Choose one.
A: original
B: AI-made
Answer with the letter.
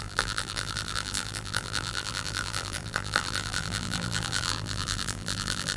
B